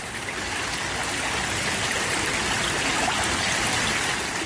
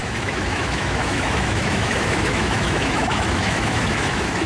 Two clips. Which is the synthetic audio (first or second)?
second